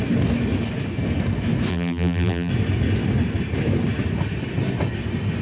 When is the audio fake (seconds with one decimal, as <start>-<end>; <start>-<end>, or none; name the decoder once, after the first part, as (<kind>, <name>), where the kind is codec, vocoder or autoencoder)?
1.7-2.5 (vocoder, BigVGAN v2)